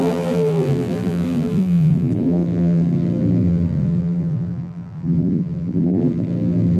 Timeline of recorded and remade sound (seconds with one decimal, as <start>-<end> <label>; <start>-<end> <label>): 0.0-6.8 remade